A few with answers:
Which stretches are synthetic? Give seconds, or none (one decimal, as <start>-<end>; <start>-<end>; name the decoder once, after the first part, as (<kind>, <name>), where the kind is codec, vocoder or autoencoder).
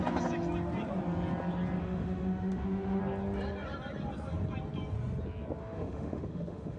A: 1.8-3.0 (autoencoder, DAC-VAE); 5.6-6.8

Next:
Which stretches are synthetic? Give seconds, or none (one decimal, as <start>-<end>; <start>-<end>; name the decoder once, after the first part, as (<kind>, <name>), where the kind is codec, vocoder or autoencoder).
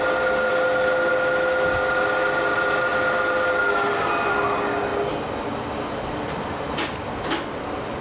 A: none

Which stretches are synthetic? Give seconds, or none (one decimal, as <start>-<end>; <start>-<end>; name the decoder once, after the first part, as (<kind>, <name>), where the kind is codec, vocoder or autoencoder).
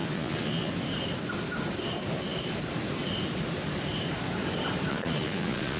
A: 0.0-0.7 (vocoder, Vocos); 4.9-5.8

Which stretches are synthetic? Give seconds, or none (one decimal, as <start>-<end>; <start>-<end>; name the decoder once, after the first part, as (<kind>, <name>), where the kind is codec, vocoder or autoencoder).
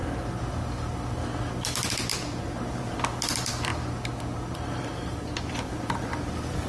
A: 1.5-2.1 (vocoder, BigVGAN v2); 2.8-3.7; 5.5-6.7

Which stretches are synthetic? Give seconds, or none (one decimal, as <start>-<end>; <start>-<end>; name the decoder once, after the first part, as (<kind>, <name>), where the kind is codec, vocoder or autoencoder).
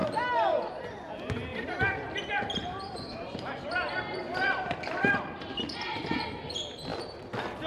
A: 1.5-6.1 (vocoder, BigVGAN v2)